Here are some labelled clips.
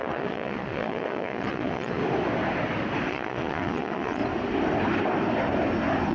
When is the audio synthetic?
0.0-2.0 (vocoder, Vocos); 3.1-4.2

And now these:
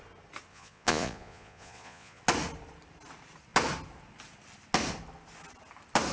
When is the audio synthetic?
0.5-2.2 (vocoder, Vocos)